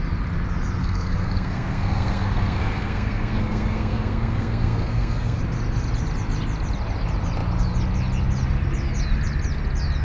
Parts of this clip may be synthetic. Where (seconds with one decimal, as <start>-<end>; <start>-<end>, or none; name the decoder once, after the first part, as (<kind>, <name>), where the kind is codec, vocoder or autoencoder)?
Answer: 0.8-5.4 (codec, SNAC)